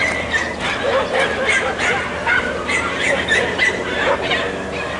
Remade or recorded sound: recorded